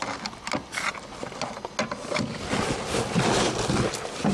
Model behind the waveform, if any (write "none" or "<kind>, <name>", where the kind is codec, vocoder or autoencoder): none